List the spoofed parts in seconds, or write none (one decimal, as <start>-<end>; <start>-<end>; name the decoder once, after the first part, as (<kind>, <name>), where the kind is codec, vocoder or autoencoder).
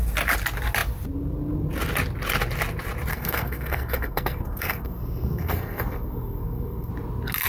3.1-6.9 (codec, SNAC)